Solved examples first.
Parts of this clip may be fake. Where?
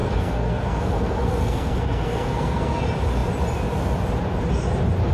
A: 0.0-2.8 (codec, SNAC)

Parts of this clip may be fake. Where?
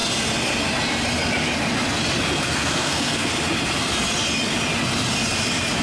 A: 2.4-3.3 (codec, SNAC)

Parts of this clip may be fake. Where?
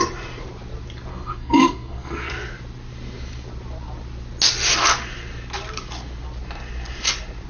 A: 1.1-2.3 (codec, SNAC)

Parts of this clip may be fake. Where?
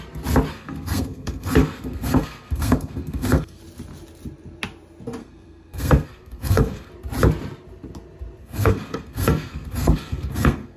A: 0.5-3.6 (codec, SNAC); 5.2-6.9; 8.4-10.8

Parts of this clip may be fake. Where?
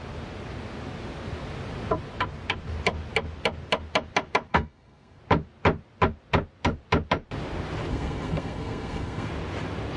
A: 4.5-5.2 (codec, SNAC); 7.9-9.3